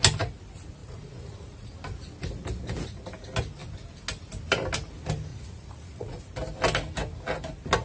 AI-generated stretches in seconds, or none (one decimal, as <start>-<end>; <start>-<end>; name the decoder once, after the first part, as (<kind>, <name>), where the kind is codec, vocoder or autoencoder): 0.8-1.7 (vocoder, Vocos); 5.3-6.2